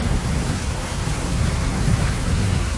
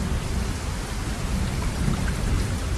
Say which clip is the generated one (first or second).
first